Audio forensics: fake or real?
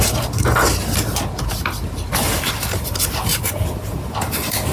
real